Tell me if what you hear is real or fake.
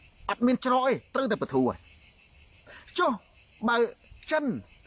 real